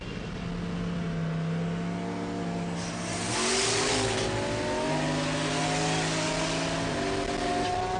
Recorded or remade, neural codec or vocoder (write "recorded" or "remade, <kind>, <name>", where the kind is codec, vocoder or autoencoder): recorded